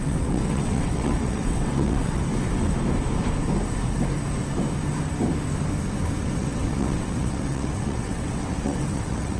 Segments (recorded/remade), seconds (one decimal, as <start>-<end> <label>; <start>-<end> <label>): 0.0-2.2 remade; 2.2-6.2 recorded; 6.2-9.4 remade